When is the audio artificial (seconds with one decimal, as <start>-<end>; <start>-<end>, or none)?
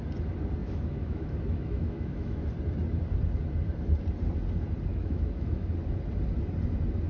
0.6-2.5; 4.9-5.7